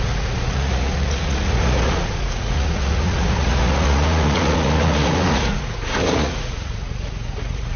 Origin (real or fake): fake